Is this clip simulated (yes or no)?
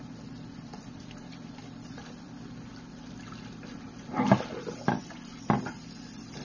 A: yes